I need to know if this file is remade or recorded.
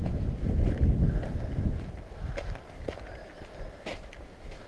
recorded